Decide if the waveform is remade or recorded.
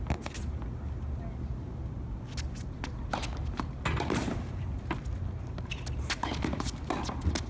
recorded